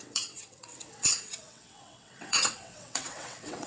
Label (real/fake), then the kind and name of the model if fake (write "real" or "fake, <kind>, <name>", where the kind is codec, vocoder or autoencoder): fake, vocoder, WaveNeXt